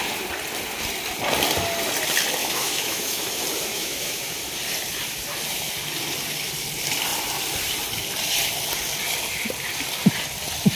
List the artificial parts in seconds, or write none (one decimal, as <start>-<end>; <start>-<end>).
2.4-3.3; 3.7-4.3

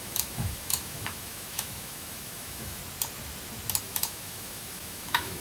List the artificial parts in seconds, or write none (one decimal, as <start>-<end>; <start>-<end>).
0.0-2.8; 3.8-5.4